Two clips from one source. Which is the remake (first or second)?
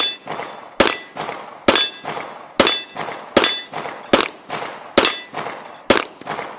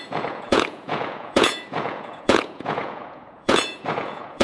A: second